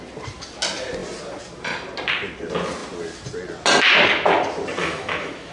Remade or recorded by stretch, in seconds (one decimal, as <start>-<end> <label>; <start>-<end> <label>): 0.0-4.8 recorded; 4.8-5.5 remade